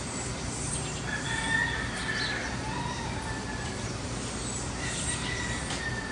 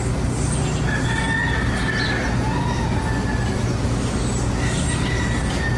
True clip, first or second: second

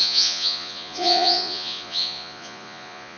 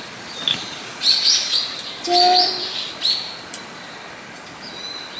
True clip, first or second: second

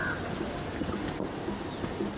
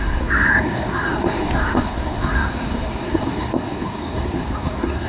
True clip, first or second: first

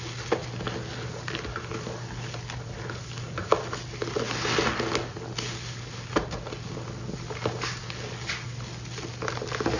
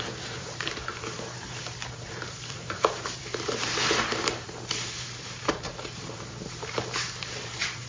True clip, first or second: first